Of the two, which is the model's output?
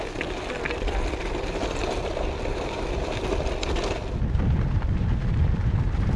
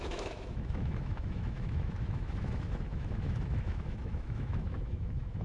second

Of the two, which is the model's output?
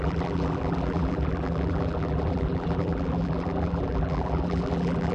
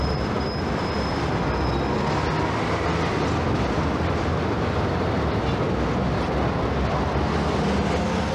first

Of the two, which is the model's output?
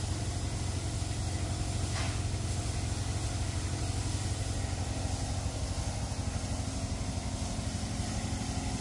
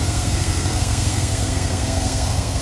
second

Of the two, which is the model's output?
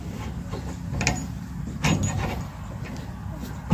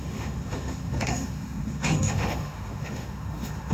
second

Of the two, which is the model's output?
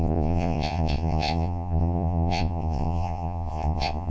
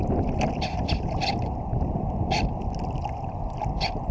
first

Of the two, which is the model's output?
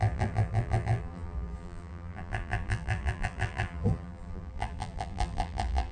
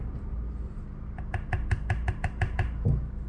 first